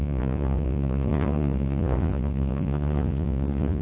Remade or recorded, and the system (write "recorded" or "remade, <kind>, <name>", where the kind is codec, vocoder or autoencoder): remade, vocoder, Vocos